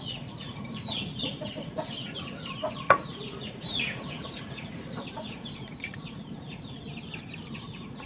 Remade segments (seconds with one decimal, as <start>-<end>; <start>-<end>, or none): 0.0-6.9; 7.5-8.1